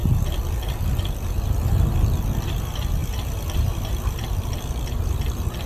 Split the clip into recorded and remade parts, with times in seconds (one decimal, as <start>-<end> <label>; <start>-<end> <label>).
0.0-5.7 recorded